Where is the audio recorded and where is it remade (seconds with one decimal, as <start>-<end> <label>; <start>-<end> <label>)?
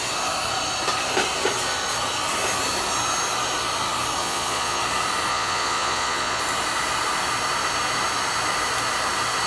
0.0-4.2 recorded; 4.2-4.8 remade; 4.8-5.3 recorded; 5.3-6.4 remade; 6.4-9.5 recorded